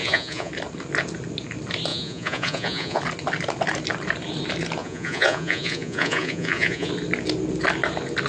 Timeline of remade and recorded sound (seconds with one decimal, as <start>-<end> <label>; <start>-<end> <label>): 0.0-0.5 remade; 0.5-1.9 recorded; 1.9-3.0 remade; 3.0-4.8 recorded; 4.8-6.9 remade; 6.9-8.3 recorded